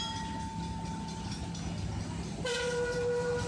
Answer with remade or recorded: recorded